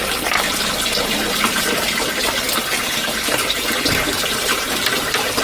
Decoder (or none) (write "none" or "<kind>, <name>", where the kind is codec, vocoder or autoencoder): none